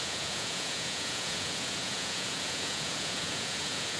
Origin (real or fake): fake